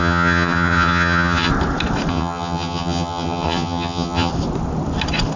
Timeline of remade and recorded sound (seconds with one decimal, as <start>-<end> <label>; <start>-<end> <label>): 0.0-1.5 remade; 1.5-2.1 recorded; 2.1-4.3 remade; 4.3-5.4 recorded